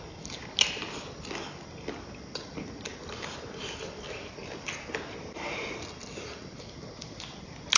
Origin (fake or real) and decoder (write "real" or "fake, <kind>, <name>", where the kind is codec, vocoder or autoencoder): real